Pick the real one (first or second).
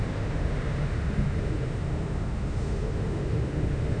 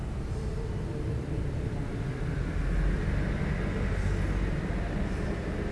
second